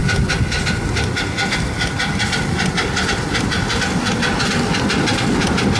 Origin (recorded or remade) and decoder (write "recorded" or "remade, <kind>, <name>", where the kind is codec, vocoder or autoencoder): recorded